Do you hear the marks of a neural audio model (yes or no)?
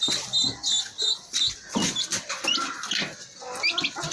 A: no